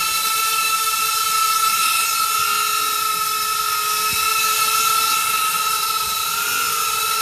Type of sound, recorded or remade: recorded